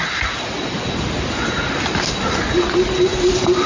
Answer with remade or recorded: recorded